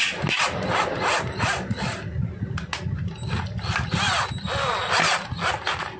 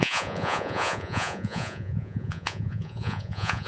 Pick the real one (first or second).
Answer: first